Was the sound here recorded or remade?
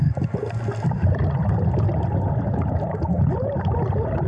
recorded